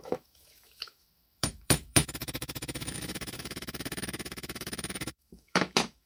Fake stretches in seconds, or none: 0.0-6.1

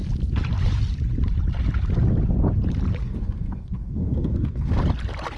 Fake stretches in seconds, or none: 3.0-4.8

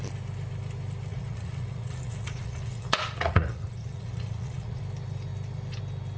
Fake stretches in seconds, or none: 1.1-4.8

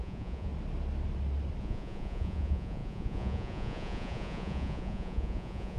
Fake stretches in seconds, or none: 0.0-0.5; 1.6-5.8

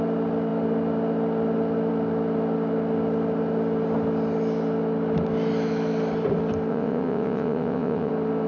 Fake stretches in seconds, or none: 6.7-8.1

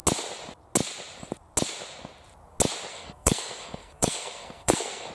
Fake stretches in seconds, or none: 2.9-5.1

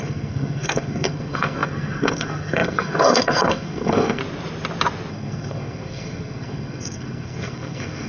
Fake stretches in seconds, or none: 0.0-4.2; 5.1-8.1